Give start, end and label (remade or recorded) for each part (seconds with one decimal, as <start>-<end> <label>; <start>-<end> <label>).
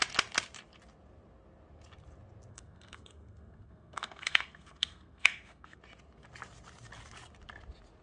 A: 0.0-2.5 recorded; 2.5-5.8 remade; 5.8-8.0 recorded